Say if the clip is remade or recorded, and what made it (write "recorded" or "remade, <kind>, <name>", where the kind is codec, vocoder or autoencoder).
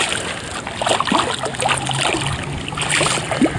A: recorded